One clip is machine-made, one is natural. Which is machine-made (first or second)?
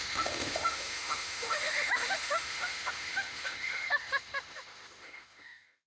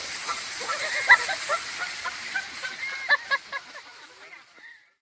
first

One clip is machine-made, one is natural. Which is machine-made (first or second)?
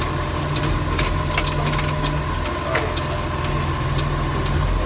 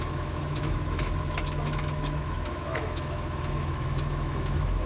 second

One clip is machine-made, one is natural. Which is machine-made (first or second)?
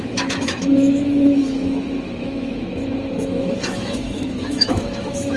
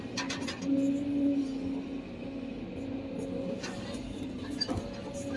first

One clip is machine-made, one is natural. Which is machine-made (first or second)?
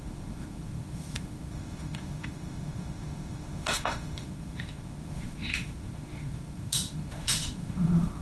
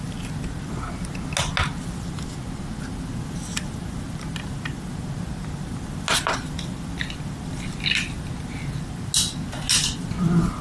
first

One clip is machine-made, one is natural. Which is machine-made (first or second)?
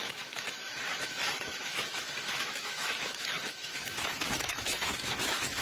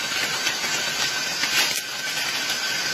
first